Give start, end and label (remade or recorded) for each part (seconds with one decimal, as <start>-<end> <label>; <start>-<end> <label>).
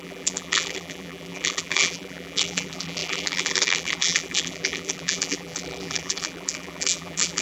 0.0-7.4 remade